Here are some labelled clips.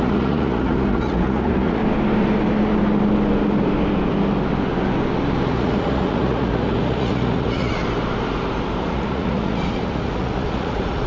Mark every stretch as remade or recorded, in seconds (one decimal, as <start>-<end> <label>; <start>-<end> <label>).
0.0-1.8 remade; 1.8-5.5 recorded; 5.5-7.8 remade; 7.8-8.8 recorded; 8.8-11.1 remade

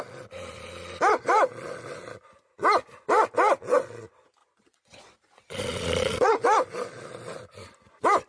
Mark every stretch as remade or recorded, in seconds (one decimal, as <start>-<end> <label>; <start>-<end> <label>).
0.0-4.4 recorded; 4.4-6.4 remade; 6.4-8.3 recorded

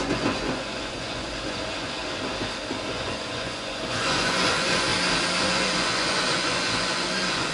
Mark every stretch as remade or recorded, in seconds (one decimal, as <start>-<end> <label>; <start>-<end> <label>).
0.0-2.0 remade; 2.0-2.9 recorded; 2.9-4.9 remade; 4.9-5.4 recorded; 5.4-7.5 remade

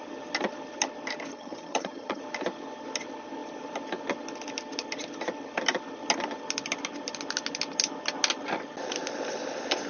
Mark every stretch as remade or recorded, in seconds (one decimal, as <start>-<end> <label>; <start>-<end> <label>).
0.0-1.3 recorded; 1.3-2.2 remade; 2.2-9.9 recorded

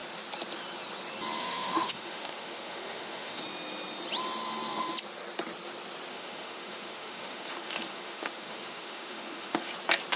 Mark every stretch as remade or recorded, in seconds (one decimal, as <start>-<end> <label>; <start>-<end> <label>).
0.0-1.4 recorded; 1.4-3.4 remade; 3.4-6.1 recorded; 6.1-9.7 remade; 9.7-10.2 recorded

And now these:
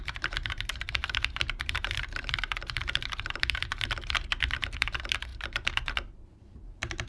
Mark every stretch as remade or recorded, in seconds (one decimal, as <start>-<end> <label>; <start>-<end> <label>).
0.0-7.1 remade

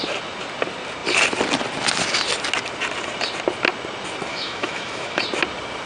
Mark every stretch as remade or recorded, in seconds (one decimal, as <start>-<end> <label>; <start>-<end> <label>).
0.0-4.3 recorded; 4.3-5.2 remade; 5.2-5.9 recorded